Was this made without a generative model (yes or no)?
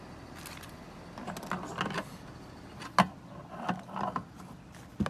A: yes